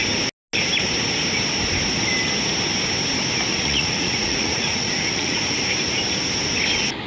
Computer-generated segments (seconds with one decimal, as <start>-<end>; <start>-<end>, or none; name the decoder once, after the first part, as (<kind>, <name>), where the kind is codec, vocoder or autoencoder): 3.5-5.4 (vocoder, Vocos)